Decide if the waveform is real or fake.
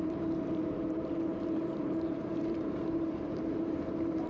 fake